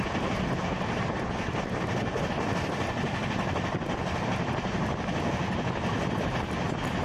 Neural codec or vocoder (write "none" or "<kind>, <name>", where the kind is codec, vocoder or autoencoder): none